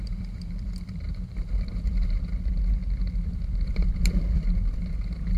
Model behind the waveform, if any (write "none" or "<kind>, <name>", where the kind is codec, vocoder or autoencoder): vocoder, BigVGAN v2